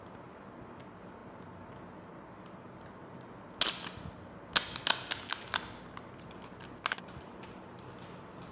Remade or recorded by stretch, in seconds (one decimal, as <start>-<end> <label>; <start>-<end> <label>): 0.0-8.5 recorded

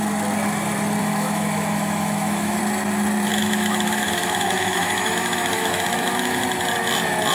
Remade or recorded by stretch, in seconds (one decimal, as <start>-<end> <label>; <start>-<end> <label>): 0.0-1.0 recorded; 1.0-2.6 remade; 2.6-3.3 recorded; 3.3-6.4 remade; 6.4-7.3 recorded

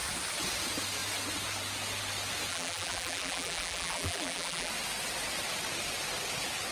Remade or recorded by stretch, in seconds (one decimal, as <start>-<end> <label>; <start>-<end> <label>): 0.0-2.5 recorded; 2.5-4.7 remade; 4.7-6.7 recorded

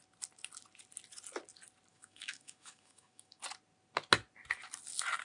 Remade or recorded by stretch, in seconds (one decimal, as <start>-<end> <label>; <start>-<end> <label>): 0.0-1.9 recorded; 1.9-3.4 remade; 3.4-5.2 recorded